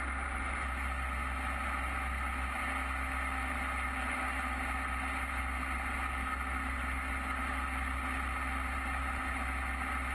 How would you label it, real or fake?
real